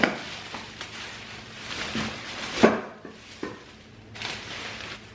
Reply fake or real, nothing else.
real